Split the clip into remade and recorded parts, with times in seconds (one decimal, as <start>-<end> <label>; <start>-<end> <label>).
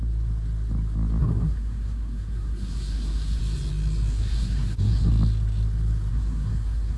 0.0-1.2 recorded; 1.2-3.4 remade; 3.4-4.1 recorded; 4.1-5.1 remade; 5.1-6.1 recorded; 6.1-7.0 remade